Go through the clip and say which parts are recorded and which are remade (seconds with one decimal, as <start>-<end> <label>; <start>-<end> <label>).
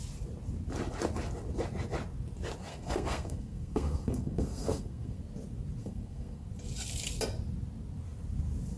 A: 0.0-2.7 recorded; 2.7-5.2 remade; 5.2-5.8 recorded; 5.8-6.5 remade; 6.5-8.8 recorded